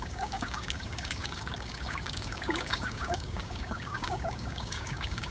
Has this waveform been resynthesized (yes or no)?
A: yes